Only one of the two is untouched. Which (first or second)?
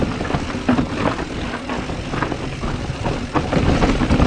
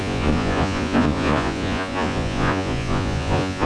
first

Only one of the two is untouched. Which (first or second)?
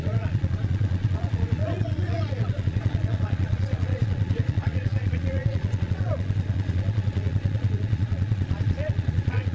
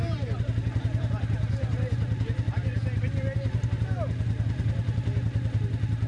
second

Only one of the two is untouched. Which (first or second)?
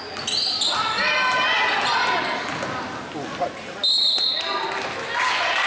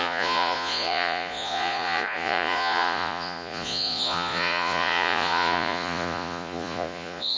first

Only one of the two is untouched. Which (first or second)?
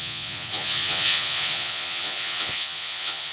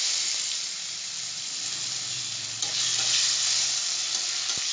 second